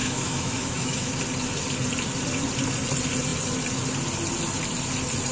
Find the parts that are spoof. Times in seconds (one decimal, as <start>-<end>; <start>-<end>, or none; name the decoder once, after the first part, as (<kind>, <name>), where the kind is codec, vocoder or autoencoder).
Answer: 0.0-1.2 (autoencoder, DAC-VAE)